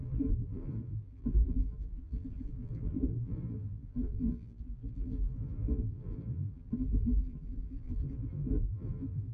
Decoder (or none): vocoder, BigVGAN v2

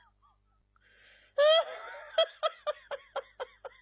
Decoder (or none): none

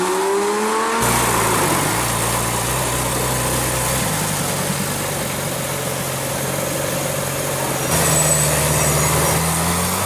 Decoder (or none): none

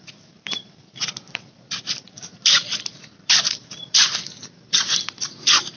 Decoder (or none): vocoder, BigVGAN v2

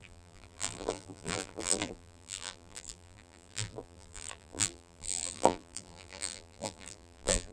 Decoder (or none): vocoder, BigVGAN v2